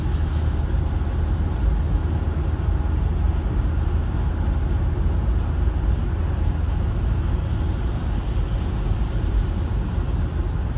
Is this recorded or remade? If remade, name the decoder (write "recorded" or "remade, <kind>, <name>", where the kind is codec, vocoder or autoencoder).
recorded